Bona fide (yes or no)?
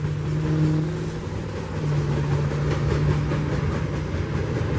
yes